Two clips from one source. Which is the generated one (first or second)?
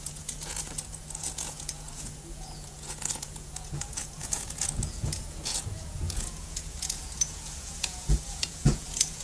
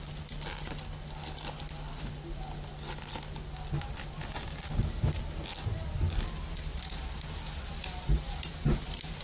first